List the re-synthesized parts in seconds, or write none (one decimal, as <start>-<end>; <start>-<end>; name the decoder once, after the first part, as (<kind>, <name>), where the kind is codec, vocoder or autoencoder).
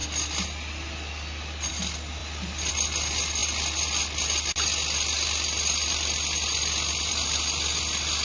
none